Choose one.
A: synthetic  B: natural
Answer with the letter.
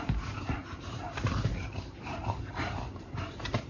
A